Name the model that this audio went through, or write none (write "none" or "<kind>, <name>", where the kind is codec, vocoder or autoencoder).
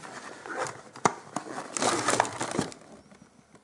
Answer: none